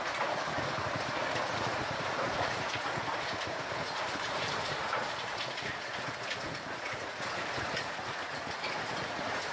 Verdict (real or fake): fake